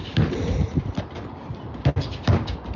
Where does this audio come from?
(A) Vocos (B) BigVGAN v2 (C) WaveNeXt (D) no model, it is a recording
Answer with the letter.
D